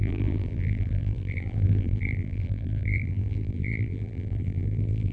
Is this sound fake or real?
fake